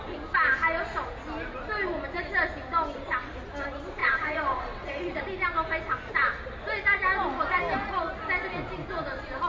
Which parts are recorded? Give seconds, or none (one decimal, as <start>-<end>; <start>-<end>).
0.0-4.0; 5.2-9.5